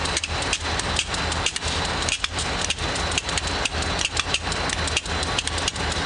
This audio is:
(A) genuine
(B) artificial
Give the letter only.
A